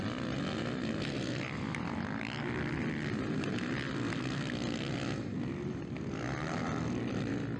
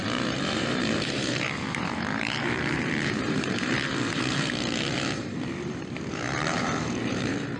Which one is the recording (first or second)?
first